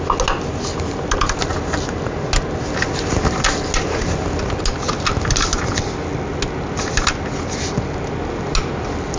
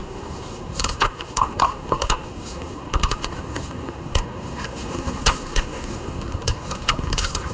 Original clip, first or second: first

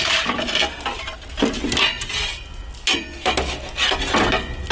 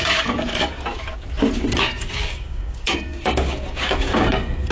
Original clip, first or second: first